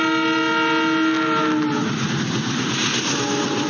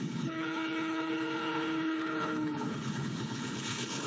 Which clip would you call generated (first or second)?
second